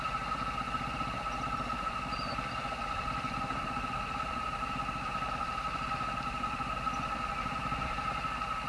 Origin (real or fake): fake